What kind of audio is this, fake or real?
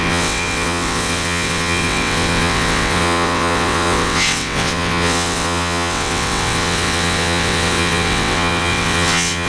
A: fake